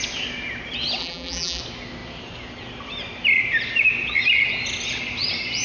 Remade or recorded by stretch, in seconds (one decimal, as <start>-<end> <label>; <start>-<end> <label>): 0.0-1.0 recorded; 1.0-1.6 remade; 1.6-5.6 recorded